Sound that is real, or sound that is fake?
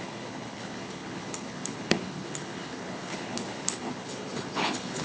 fake